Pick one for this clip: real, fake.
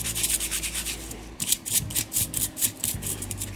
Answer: fake